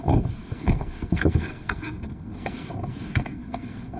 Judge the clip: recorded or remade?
remade